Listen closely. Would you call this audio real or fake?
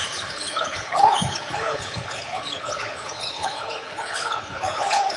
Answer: fake